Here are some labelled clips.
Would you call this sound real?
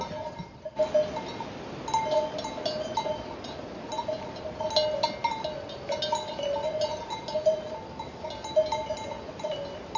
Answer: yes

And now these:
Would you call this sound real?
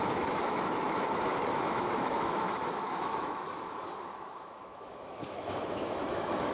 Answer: no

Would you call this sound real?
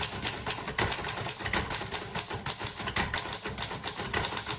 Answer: yes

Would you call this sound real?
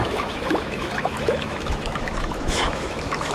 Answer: no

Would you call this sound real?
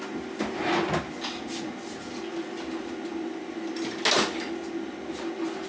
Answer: yes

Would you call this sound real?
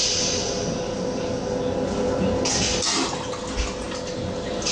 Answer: yes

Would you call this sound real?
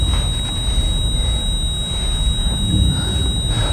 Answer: yes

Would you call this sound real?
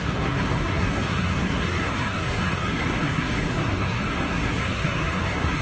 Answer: no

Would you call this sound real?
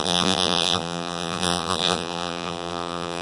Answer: no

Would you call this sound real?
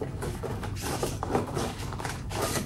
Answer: no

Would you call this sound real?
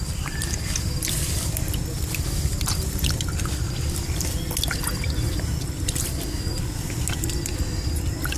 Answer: yes